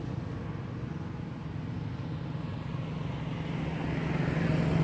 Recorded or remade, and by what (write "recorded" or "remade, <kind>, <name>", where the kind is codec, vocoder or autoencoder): recorded